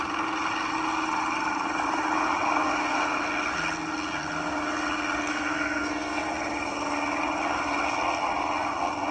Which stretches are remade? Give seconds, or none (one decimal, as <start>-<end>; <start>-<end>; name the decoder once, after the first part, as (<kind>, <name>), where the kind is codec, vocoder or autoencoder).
5.3-6.3 (codec, SNAC)